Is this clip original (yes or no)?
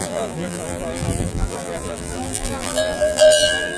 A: no